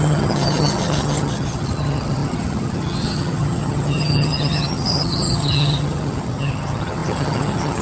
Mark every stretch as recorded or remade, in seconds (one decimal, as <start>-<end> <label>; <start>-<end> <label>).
0.0-7.8 remade